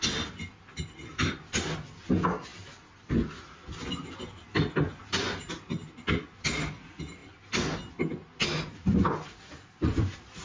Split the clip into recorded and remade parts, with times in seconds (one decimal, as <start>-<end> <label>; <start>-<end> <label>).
0.0-10.4 recorded